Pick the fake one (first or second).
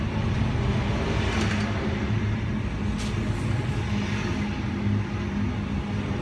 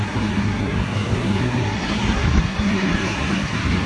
second